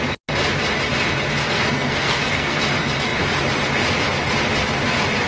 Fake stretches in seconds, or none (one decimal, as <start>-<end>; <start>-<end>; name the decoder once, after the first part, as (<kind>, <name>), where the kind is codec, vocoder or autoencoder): 1.4-2.6 (codec, SNAC)